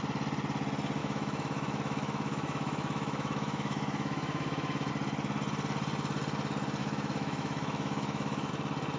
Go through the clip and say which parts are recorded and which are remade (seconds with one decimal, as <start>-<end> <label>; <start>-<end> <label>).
0.0-1.0 recorded; 1.0-4.9 remade; 4.9-6.8 recorded; 6.8-8.5 remade; 8.5-9.0 recorded